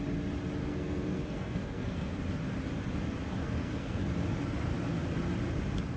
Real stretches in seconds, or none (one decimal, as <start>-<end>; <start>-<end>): 0.0-0.6; 2.2-3.4; 4.0-6.0